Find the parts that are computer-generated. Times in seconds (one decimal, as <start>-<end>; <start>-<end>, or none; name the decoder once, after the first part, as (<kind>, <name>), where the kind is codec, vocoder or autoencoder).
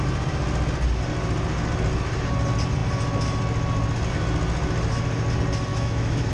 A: 5.7-6.3 (autoencoder, DAC-VAE)